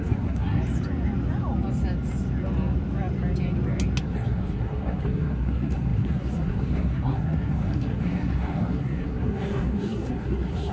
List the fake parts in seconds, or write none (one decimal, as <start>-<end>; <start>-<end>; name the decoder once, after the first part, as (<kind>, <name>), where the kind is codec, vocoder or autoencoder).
0.0-0.6 (codec, SNAC); 4.0-10.7